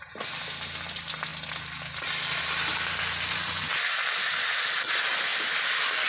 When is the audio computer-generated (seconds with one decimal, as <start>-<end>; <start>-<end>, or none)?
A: none

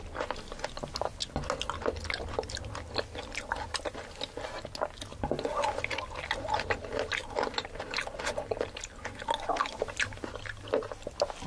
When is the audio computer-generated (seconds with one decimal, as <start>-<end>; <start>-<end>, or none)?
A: 7.2-7.8

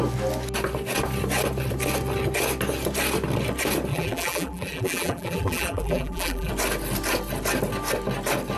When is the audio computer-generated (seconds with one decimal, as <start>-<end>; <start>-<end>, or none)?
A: 3.9-6.5

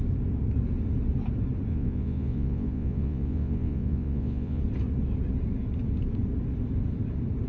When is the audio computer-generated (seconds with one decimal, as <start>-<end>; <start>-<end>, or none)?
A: 1.7-4.6

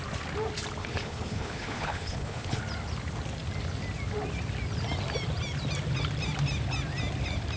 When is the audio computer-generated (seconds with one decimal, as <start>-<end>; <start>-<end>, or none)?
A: 0.8-2.6

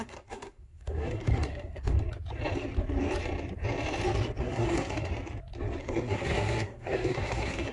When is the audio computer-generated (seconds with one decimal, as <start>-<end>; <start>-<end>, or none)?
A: 0.0-1.9; 4.4-5.1; 5.8-7.7

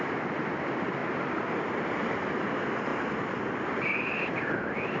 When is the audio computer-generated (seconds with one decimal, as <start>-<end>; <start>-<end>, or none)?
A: none